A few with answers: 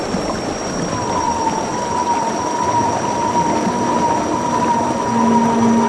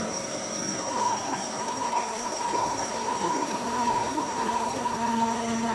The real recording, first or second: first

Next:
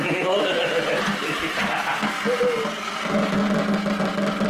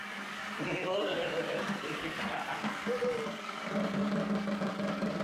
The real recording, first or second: first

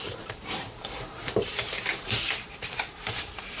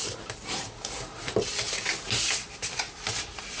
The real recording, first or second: second